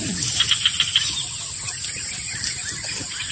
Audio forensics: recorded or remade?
remade